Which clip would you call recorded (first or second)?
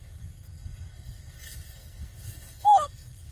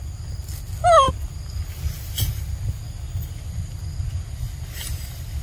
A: second